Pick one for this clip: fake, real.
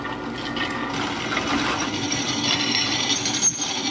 real